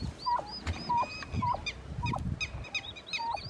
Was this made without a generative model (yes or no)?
yes